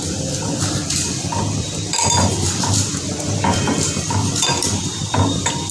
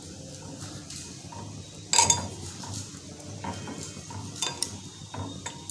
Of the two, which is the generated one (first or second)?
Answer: first